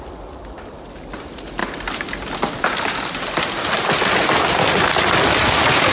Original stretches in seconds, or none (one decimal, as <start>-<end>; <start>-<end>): 0.0-5.9